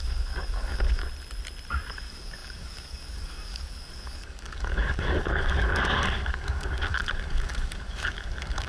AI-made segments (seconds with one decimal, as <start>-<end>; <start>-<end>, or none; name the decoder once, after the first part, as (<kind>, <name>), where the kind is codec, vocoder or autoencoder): 0.0-1.0 (codec, DAC); 1.9-8.7